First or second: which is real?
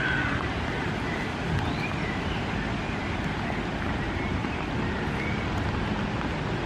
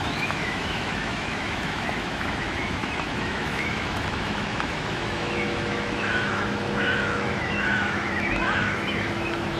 first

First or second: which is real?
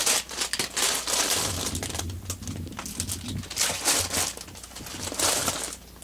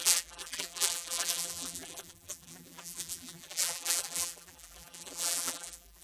first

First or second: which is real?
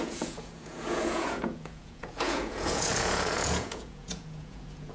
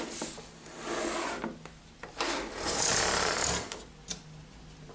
second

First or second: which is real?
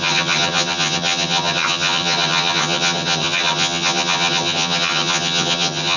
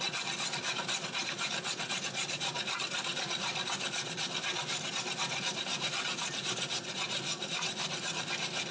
second